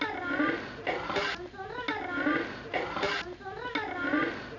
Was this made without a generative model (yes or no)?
yes